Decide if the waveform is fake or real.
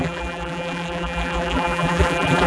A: fake